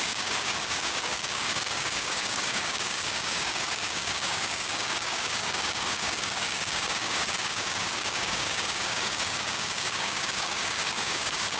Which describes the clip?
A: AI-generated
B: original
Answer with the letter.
A